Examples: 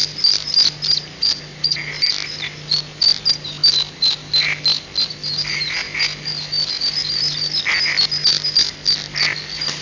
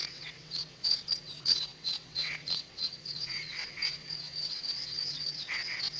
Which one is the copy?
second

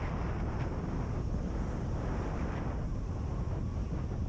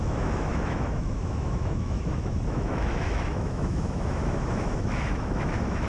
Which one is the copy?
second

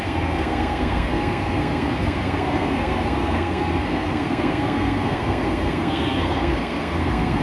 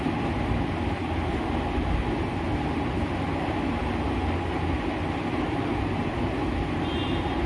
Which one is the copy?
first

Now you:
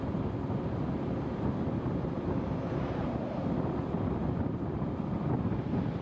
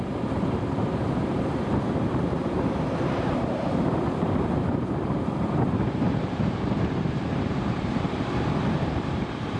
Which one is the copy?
second